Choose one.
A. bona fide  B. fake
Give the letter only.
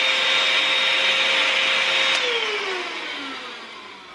A